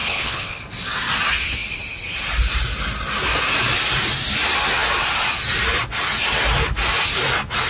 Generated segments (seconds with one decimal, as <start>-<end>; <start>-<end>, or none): 0.0-0.6